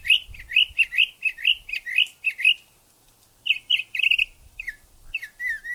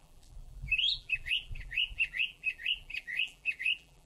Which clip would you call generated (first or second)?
second